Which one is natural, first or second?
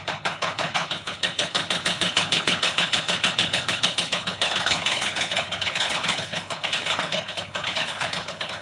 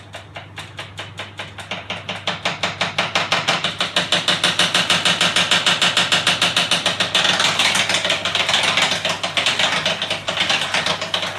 second